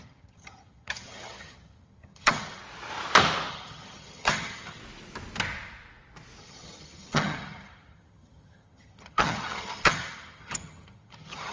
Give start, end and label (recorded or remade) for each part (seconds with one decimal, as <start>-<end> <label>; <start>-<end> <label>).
0.0-2.6 remade; 2.6-3.5 recorded; 3.5-4.8 remade; 4.8-6.4 recorded; 6.4-11.5 remade